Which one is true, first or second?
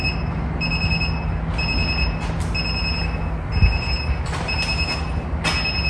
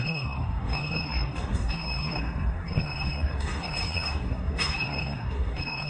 first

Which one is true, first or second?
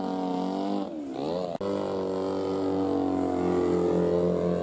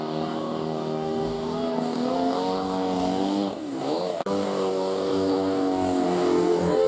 first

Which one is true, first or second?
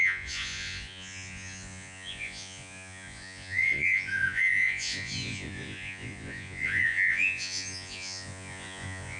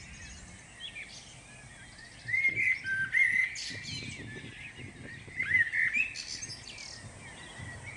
second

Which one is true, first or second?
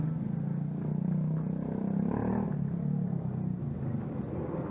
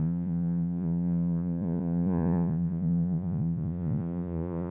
first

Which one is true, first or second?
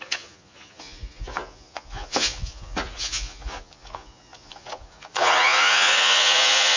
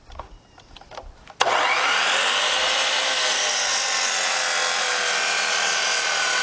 second